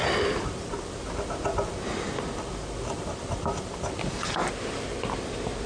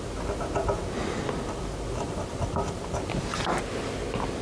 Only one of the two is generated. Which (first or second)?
first